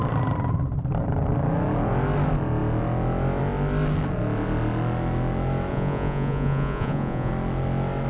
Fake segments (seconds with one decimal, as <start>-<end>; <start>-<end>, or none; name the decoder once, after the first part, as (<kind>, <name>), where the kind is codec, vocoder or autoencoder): 5.7-7.3 (vocoder, Vocos)